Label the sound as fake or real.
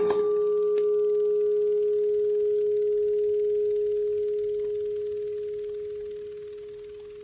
real